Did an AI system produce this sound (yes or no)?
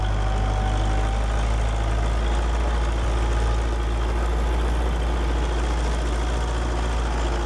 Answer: no